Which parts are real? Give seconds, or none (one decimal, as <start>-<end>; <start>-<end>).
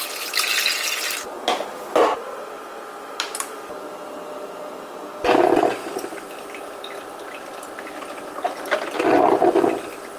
0.0-10.2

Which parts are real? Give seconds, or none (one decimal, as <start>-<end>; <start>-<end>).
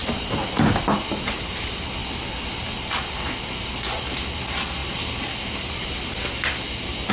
0.0-7.1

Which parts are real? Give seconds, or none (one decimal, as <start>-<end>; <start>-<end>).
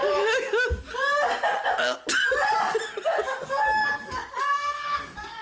0.0-3.2